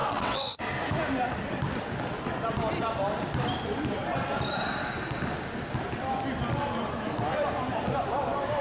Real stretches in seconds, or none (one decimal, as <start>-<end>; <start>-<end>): 0.6-8.6